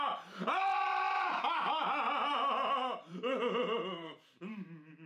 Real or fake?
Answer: fake